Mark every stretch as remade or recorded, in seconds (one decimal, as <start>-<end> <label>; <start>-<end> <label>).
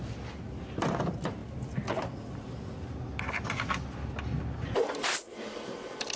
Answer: 0.0-6.2 recorded